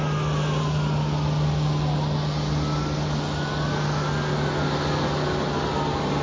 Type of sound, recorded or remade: recorded